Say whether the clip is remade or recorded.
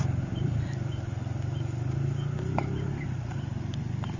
recorded